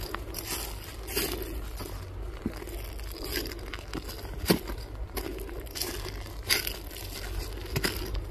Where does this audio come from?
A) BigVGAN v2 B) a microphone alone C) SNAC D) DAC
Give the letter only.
B